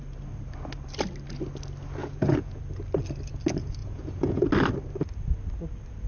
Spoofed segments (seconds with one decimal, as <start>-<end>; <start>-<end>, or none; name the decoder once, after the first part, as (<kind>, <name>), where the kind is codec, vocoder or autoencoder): 2.0-2.6 (vocoder, Vocos); 3.8-4.5